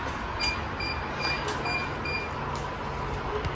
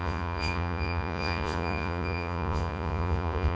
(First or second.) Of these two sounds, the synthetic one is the second